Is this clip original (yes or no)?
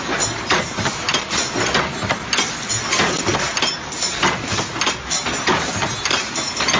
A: yes